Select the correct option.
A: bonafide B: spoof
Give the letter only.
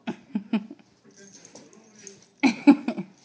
A